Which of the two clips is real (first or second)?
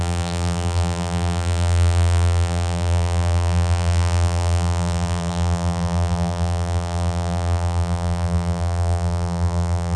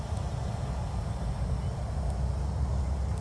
second